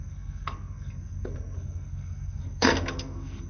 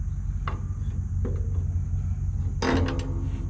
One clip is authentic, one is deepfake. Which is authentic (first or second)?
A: second